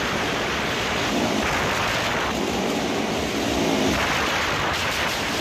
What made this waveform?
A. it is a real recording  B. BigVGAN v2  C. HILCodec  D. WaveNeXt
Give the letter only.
A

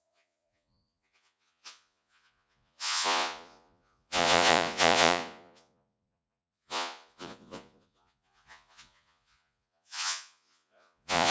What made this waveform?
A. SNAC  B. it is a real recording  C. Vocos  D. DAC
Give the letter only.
C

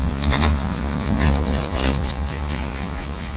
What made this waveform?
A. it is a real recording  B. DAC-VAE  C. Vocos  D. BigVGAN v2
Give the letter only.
C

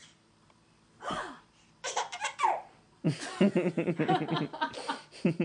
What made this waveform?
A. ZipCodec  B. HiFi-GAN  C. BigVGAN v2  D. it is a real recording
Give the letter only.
C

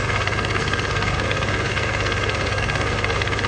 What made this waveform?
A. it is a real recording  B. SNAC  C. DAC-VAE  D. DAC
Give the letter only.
B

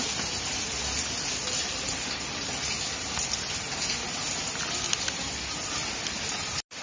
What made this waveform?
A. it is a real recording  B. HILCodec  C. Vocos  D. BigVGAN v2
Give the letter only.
A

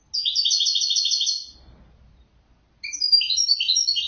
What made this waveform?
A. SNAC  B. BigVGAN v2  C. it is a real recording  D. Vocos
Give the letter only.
C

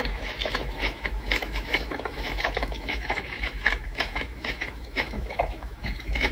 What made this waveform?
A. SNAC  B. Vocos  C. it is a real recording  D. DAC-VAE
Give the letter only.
D